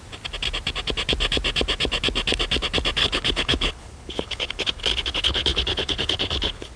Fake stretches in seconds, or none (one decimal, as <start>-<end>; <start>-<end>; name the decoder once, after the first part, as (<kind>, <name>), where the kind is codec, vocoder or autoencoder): 3.0-6.8 (codec, HILCodec)